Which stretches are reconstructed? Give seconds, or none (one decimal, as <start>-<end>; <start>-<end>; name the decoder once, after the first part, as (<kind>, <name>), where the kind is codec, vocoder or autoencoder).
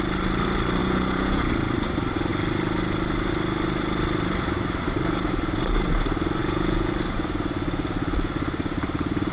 0.8-1.5 (vocoder, Vocos); 6.4-6.9